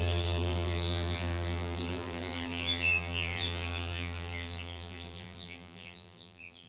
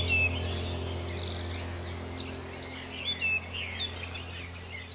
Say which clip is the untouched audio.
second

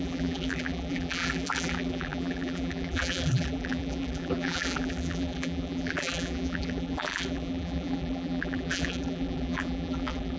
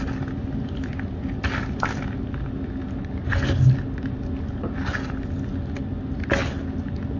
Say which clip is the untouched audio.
second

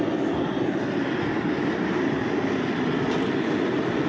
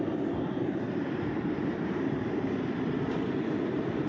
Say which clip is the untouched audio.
first